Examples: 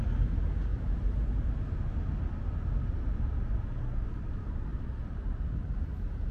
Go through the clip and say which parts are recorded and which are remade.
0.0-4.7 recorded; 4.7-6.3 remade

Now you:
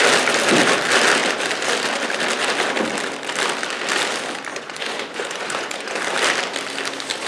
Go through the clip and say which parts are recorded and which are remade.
0.0-4.5 recorded; 4.5-6.0 remade; 6.0-7.3 recorded